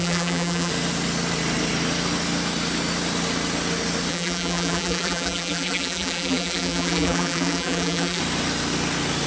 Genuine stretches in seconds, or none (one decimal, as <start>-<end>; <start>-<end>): 0.7-4.1; 8.2-9.3